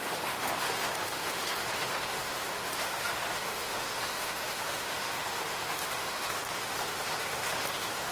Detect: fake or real fake